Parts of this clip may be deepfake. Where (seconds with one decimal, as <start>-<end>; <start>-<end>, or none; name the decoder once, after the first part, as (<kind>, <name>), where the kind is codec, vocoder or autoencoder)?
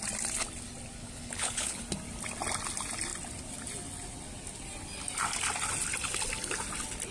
1.0-1.8 (codec, HILCodec)